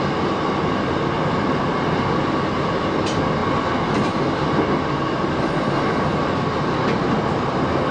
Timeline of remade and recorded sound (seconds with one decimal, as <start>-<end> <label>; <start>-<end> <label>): 0.0-7.9 recorded